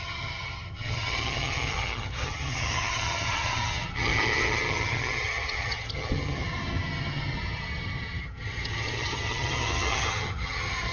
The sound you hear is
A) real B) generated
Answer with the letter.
B